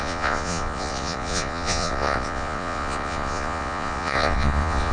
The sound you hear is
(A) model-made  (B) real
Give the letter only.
A